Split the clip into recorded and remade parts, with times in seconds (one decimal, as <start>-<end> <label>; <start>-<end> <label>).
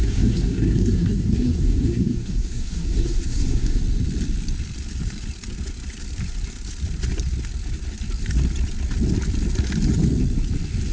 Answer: 0.0-3.8 remade; 3.8-10.9 recorded